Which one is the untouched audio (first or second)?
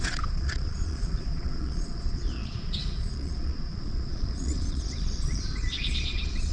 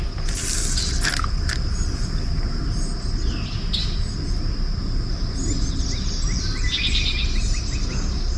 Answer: second